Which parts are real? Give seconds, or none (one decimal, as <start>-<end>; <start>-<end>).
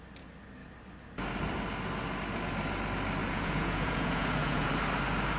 0.0-3.2; 4.7-5.4